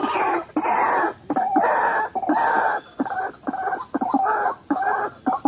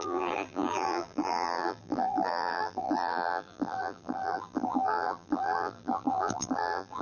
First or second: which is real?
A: first